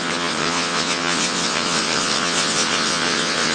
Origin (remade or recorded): remade